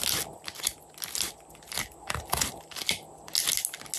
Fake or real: real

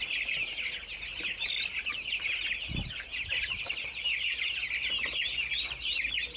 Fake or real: real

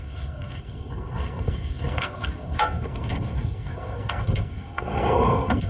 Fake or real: fake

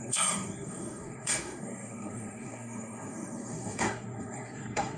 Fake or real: fake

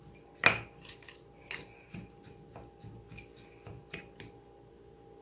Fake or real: real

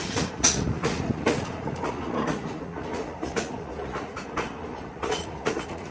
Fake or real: fake